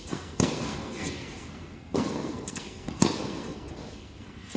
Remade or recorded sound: remade